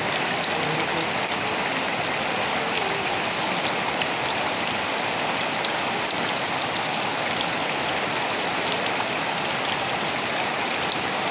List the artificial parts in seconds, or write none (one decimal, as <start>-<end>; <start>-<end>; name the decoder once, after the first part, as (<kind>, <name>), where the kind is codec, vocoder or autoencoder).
none